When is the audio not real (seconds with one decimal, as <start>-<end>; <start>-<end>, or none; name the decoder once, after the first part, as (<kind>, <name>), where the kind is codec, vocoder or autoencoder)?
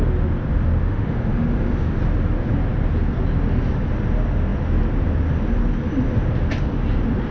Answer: 0.8-2.0 (autoencoder, DAC-VAE)